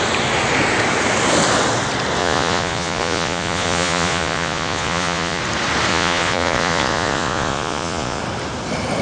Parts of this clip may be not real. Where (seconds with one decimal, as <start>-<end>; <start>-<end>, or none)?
2.2-5.4; 5.9-8.2